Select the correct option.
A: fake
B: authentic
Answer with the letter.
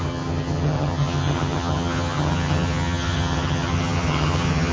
A